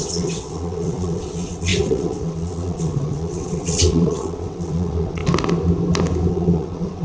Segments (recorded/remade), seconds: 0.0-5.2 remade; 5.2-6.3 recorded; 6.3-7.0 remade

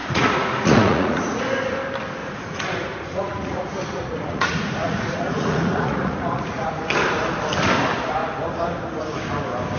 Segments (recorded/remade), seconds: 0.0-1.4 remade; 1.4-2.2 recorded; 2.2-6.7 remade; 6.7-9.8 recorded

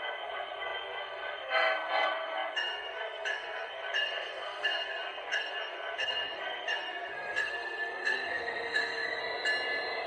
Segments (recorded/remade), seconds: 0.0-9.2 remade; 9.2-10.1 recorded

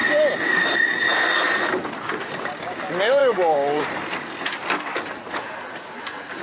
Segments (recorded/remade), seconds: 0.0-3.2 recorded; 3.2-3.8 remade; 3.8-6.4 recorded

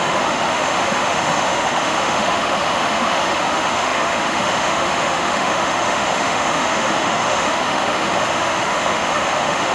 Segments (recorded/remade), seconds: 0.0-9.7 remade

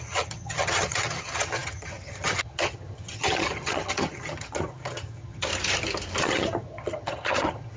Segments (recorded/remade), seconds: 0.0-5.5 remade; 5.5-6.2 recorded; 6.2-7.8 remade

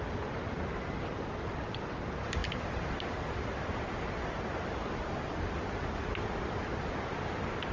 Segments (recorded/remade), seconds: 0.0-7.7 recorded

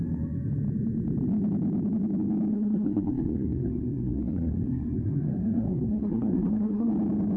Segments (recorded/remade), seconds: 0.0-2.5 recorded; 2.5-6.9 remade; 6.9-7.4 recorded